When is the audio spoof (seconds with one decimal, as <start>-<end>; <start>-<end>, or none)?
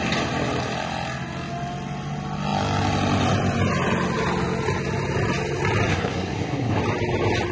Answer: 5.9-6.8